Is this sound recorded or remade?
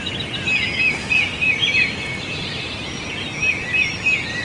recorded